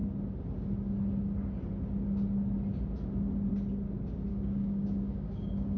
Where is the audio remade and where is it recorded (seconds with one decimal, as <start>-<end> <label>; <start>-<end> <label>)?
0.0-4.3 recorded; 4.3-5.8 remade